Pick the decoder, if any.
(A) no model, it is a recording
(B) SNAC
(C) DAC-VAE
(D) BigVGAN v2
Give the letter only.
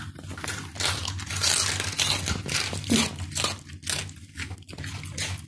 A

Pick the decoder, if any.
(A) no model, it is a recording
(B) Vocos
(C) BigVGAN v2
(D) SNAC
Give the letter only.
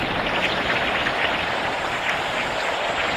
A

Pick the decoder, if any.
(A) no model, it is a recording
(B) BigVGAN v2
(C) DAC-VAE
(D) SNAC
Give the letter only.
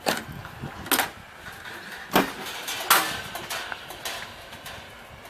A